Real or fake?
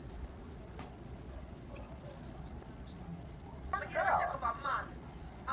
fake